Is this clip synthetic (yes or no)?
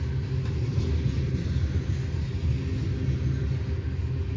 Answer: no